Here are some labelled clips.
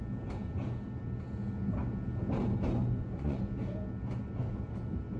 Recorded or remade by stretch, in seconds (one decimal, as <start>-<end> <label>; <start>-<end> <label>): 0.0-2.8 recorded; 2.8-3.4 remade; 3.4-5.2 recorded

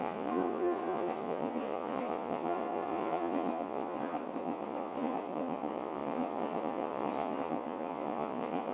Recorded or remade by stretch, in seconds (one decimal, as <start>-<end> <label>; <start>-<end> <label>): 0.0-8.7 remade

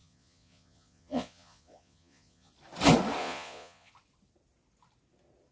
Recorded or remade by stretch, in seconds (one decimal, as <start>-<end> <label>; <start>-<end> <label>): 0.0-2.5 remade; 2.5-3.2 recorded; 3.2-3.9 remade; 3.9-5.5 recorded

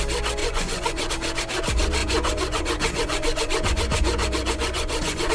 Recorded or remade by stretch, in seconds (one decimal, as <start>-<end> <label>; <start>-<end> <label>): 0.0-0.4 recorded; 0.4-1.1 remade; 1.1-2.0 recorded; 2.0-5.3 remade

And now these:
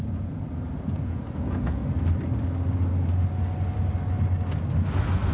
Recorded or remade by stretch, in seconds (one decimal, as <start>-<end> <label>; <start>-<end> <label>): 0.0-1.8 remade; 1.8-5.3 recorded